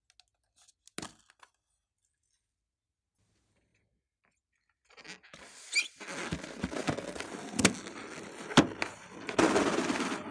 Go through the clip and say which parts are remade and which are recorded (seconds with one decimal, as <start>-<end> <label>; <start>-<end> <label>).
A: 0.0-10.3 recorded